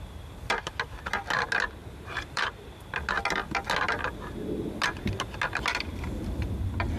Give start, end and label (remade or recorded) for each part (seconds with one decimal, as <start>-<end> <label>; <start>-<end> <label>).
0.0-1.8 recorded; 1.8-2.8 remade; 2.8-7.0 recorded